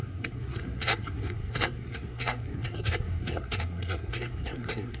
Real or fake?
fake